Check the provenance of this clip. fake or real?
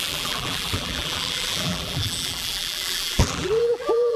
fake